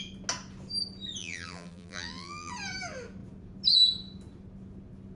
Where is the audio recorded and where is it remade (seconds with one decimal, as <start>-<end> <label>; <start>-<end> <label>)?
0.0-1.2 recorded; 1.2-2.5 remade; 2.5-5.1 recorded